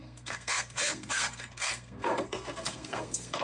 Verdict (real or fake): fake